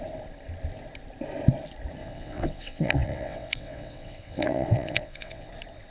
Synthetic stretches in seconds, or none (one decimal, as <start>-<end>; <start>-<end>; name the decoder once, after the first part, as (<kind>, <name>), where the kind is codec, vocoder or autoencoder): 2.0-5.5 (vocoder, WaveNeXt)